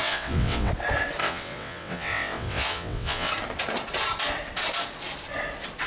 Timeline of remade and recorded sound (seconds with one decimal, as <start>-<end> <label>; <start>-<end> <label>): 0.0-0.7 remade; 0.7-1.2 recorded; 1.2-3.3 remade; 3.3-5.9 recorded